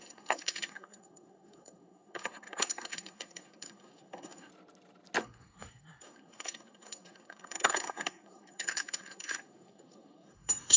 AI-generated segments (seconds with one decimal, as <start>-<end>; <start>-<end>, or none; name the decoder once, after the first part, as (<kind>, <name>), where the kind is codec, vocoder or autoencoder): 0.0-4.5 (codec, SNAC); 5.2-10.8